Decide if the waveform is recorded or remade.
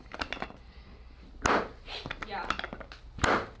recorded